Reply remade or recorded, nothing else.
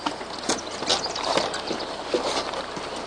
recorded